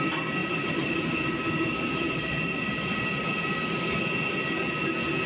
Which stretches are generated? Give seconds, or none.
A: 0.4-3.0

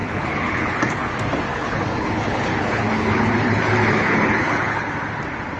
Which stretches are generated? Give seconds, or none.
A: 0.0-1.1; 1.5-4.9

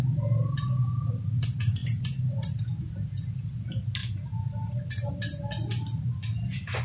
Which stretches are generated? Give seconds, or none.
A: 4.0-5.1

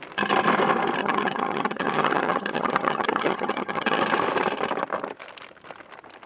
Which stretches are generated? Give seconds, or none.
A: 1.0-4.0